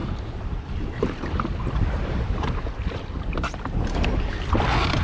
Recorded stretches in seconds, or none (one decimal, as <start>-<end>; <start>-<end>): 3.0-5.0